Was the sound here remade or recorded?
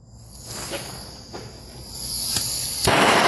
recorded